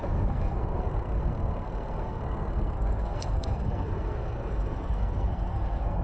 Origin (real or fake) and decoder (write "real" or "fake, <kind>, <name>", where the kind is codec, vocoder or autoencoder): fake, codec, SNAC